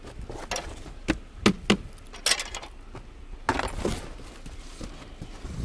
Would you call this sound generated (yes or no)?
no